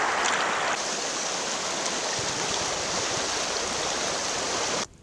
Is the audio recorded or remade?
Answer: recorded